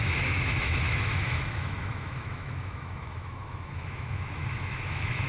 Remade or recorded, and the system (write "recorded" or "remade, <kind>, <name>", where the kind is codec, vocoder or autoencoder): remade, autoencoder, DAC-VAE